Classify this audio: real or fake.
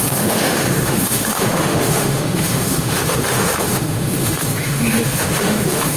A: fake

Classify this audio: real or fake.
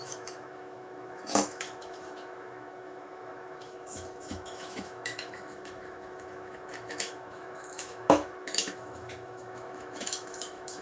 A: fake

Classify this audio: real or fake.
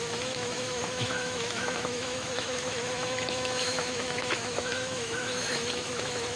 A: fake